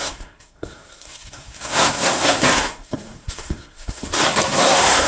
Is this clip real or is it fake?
fake